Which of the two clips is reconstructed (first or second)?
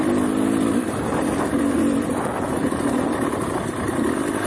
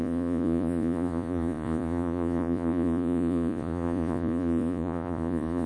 second